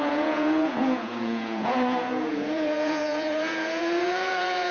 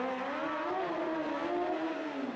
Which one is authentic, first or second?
second